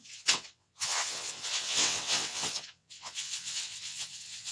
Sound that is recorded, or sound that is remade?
remade